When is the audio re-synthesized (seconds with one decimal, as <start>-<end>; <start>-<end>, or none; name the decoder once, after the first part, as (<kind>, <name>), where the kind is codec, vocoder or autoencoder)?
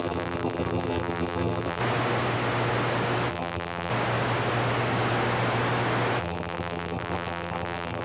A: 0.0-1.8 (vocoder, BigVGAN v2); 3.3-3.9; 6.2-8.0